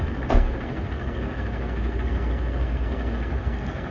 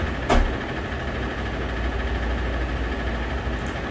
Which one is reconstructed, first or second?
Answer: first